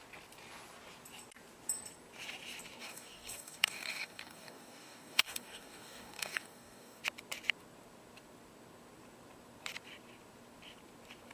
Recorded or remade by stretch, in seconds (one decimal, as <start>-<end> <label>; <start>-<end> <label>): 0.0-2.8 recorded; 2.8-7.0 remade; 7.0-11.3 recorded